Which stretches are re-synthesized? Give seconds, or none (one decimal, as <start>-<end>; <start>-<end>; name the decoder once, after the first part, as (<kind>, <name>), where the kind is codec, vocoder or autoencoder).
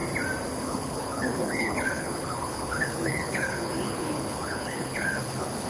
0.6-5.7 (codec, HILCodec)